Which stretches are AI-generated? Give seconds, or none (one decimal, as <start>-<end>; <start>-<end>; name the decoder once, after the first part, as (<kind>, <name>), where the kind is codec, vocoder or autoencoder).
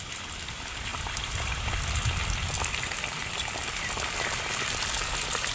0.9-1.7 (vocoder, BigVGAN v2)